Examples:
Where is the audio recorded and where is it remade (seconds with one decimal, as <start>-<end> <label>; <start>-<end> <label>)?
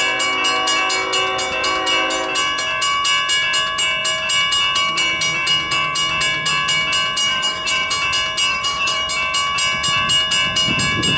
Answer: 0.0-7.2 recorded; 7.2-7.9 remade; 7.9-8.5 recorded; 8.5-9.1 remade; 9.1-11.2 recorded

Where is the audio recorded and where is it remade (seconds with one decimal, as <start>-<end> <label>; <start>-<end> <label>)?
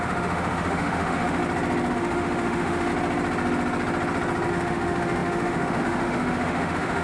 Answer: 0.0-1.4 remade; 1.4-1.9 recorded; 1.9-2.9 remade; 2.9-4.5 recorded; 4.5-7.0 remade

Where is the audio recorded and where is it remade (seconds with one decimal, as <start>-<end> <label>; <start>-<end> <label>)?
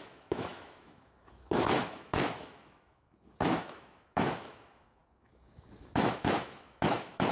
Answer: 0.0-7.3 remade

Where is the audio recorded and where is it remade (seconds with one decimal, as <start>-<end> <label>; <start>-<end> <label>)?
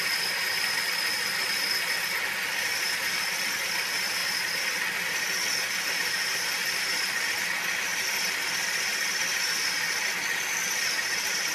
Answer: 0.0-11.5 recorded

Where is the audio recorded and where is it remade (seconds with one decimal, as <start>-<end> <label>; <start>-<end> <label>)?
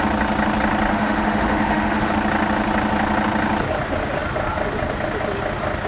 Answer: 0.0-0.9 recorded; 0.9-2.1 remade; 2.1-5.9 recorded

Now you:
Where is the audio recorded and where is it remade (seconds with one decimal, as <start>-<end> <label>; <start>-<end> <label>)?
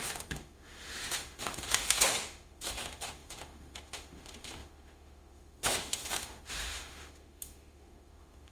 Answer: 0.0-8.5 remade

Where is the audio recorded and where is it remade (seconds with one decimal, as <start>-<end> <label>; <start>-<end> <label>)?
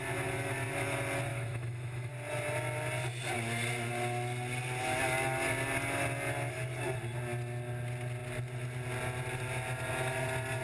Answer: 0.0-1.3 recorded; 1.3-2.1 remade; 2.1-10.6 recorded